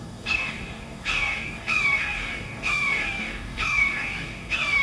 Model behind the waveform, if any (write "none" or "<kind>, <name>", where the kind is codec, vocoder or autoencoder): codec, DAC